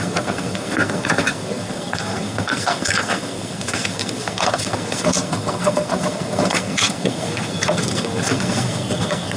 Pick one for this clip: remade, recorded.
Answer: remade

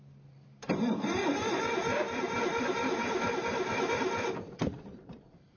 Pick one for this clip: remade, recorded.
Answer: remade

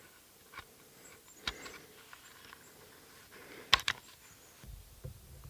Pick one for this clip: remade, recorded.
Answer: recorded